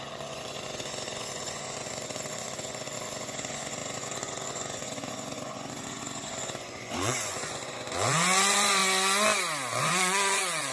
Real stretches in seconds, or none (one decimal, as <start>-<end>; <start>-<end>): 8.8-9.8

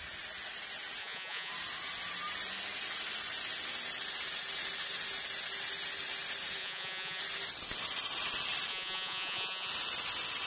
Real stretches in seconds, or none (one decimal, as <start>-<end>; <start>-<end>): 0.0-1.0; 1.5-6.6; 7.2-8.7; 9.7-10.5